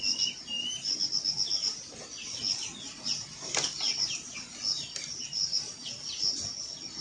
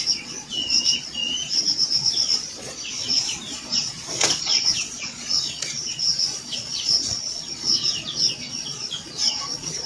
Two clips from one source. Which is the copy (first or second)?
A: second